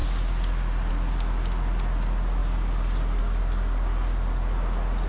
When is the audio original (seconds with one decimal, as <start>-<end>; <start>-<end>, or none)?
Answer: 0.0-5.1